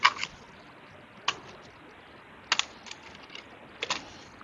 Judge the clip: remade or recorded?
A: recorded